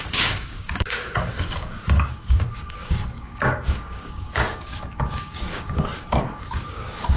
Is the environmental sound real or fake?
fake